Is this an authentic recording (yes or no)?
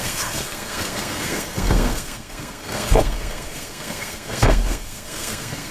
no